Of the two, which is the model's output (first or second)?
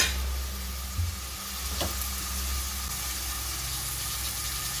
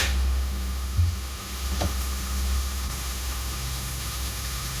second